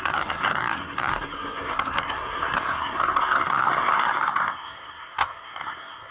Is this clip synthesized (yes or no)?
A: yes